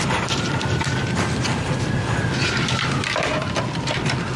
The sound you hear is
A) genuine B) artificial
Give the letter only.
B